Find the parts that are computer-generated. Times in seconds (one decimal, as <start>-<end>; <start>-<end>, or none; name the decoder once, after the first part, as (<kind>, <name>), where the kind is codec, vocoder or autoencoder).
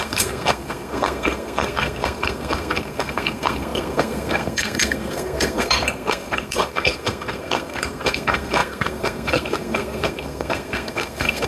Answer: 0.0-11.5 (codec, SNAC)